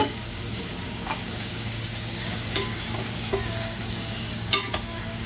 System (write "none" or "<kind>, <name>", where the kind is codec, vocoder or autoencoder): codec, DAC